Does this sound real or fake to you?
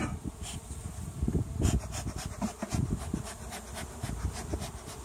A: real